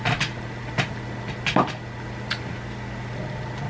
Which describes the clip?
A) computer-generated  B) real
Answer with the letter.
B